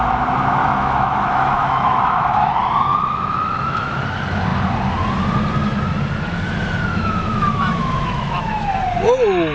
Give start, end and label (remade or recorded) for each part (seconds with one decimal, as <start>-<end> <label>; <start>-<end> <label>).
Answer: 0.0-0.6 recorded; 0.6-2.5 remade; 2.5-2.9 recorded; 2.9-4.0 remade; 4.0-6.9 recorded; 6.9-8.7 remade; 8.7-9.5 recorded